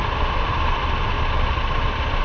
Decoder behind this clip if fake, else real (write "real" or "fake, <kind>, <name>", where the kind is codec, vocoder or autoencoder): real